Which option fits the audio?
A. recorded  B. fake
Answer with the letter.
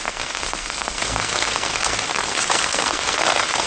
B